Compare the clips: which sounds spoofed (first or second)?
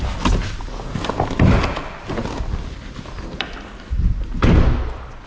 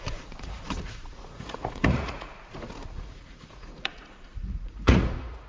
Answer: second